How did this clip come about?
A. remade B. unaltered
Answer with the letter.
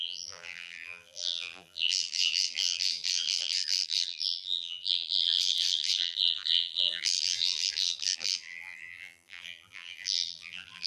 A